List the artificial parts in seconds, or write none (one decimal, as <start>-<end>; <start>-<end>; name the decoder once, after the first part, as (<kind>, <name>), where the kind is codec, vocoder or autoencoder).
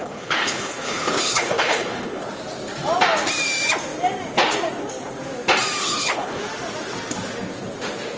0.0-2.3 (codec, HILCodec); 5.8-6.4